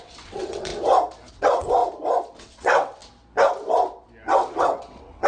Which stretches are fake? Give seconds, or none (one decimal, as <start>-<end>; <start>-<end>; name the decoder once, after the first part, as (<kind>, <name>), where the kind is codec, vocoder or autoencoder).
0.0-0.7 (vocoder, WaveNeXt); 1.3-1.8; 2.4-3.0; 4.5-5.3